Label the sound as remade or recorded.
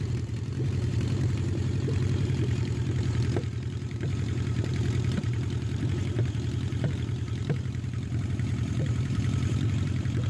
remade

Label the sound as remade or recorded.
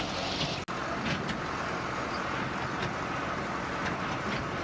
recorded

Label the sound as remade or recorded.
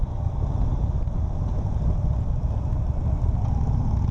recorded